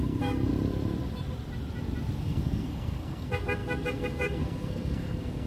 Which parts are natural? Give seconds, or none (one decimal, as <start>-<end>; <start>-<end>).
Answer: 0.5-2.2